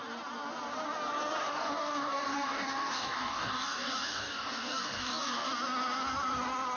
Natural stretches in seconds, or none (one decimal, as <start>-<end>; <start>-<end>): 0.0-1.4; 5.5-6.8